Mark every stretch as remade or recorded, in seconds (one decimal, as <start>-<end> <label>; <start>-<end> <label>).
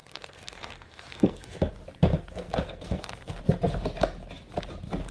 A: 0.0-1.7 remade; 1.7-2.1 recorded; 2.1-3.4 remade; 3.4-5.1 recorded